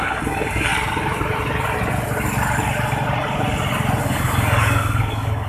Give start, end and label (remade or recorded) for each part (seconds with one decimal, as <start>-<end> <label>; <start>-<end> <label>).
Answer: 0.0-0.7 remade; 0.7-4.0 recorded; 4.0-5.5 remade